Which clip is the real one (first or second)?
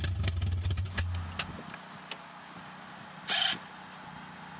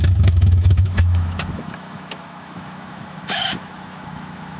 first